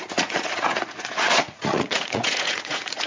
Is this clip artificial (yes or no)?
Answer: yes